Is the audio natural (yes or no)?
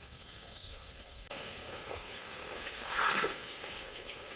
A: no